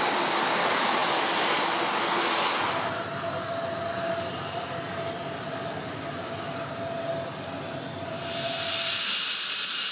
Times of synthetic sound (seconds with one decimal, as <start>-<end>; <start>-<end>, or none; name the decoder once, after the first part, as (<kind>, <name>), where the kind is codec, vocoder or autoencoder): none